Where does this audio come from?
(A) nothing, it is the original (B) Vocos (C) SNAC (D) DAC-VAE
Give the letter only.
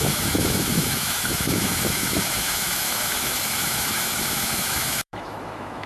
D